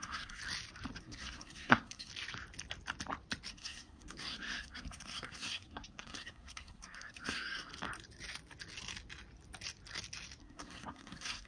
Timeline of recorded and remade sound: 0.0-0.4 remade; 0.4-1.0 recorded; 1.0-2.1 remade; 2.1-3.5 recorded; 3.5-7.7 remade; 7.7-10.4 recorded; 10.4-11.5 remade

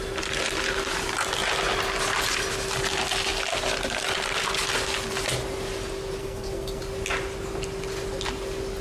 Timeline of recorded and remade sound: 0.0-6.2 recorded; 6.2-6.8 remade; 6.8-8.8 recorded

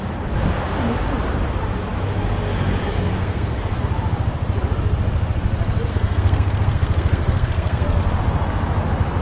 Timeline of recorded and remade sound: 0.0-3.2 recorded; 3.2-3.8 remade; 3.8-5.9 recorded; 5.9-8.0 remade; 8.0-9.2 recorded

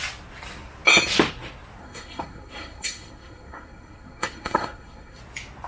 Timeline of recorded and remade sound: 0.0-1.8 recorded; 1.8-5.2 remade; 5.2-5.7 recorded

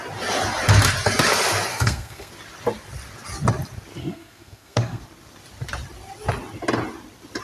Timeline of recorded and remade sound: 0.0-1.7 recorded; 1.7-2.3 remade; 2.3-4.0 recorded; 4.0-5.0 remade; 5.0-7.4 recorded

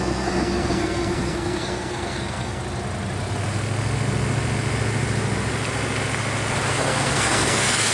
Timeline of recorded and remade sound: 0.0-2.6 remade; 2.6-6.7 recorded; 6.7-7.9 remade

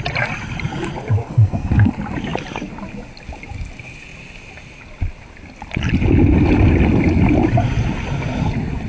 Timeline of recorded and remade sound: 0.0-1.2 recorded; 1.2-1.9 remade; 1.9-8.9 recorded